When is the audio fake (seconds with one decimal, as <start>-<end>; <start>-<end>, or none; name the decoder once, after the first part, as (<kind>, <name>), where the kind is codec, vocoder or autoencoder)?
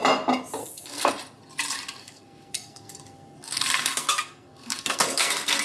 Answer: 0.6-1.1 (codec, SNAC); 2.0-5.6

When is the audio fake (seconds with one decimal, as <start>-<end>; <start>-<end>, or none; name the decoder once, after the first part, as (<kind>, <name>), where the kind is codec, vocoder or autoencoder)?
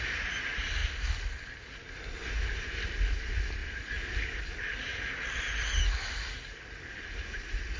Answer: none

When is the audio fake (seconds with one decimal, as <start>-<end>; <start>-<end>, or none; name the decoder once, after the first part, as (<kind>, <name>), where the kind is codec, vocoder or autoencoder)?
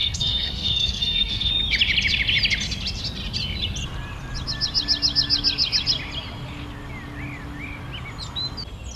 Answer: 0.0-1.5 (codec, SNAC)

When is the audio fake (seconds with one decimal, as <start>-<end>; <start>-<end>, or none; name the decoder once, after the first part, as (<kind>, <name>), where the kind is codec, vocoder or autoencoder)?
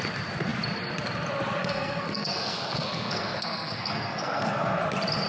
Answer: 1.6-4.8 (codec, SNAC)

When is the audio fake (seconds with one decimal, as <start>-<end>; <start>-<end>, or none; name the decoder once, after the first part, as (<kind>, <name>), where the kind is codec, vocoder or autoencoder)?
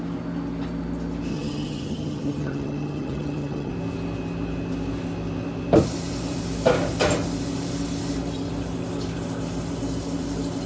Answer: 1.3-3.7 (vocoder, HiFi-GAN)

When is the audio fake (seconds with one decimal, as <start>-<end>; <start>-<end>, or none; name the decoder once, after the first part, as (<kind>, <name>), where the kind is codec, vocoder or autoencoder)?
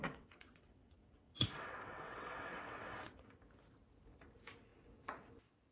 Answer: 0.0-3.4 (vocoder, WaveNeXt)